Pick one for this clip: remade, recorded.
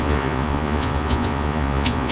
remade